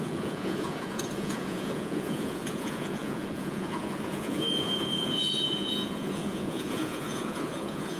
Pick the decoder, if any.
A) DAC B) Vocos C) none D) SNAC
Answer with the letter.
B